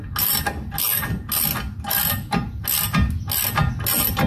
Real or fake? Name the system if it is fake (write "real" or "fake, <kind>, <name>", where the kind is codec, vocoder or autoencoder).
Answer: real